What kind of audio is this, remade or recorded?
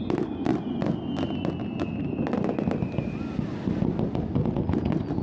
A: recorded